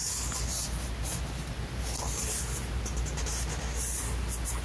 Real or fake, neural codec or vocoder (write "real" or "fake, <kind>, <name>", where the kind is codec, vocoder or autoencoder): real